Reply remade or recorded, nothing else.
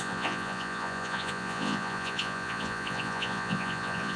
remade